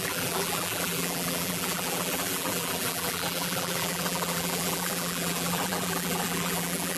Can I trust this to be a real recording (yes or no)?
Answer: no